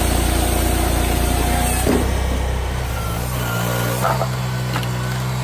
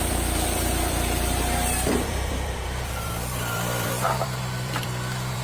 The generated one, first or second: second